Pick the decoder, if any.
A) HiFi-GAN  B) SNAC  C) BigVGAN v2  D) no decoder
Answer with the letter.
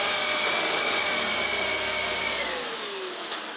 D